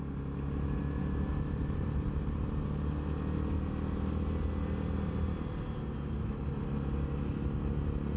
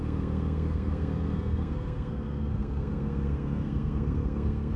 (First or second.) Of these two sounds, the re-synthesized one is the second